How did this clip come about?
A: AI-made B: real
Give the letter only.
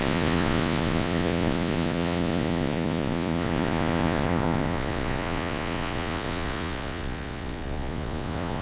A